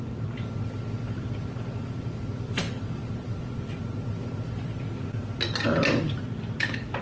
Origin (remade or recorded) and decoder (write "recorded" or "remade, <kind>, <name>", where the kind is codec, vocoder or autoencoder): recorded